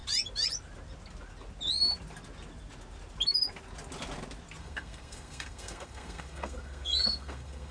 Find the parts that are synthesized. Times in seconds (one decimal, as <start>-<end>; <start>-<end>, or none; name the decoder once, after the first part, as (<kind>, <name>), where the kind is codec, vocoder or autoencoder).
4.6-7.7 (codec, SNAC)